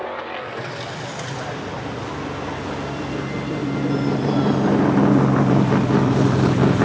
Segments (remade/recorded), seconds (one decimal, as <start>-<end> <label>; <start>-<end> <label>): 0.0-6.8 recorded